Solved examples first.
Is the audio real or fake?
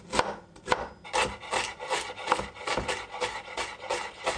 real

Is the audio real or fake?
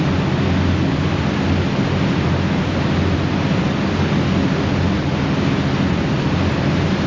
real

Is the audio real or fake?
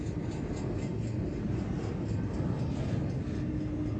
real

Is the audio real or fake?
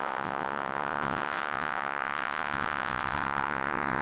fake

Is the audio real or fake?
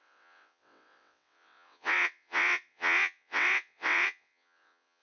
fake